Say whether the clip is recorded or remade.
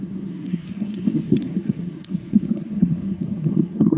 remade